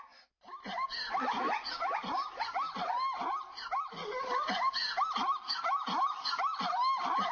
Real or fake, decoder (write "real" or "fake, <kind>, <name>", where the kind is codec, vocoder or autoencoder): real